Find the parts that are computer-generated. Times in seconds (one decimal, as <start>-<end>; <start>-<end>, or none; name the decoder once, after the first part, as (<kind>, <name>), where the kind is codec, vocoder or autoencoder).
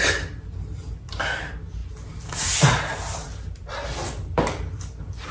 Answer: none